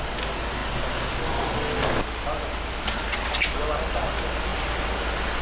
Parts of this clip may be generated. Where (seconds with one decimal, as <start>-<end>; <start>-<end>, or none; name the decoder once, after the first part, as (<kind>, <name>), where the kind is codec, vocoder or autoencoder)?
none